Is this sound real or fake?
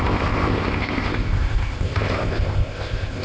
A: fake